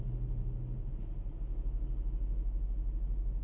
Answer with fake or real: real